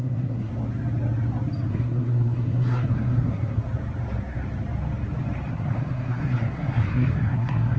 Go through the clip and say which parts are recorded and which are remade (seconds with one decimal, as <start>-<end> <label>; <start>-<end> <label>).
0.0-0.5 remade; 0.5-1.7 recorded; 1.7-3.6 remade; 3.6-5.5 recorded; 5.5-7.8 remade